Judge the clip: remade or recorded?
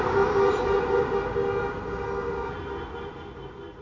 recorded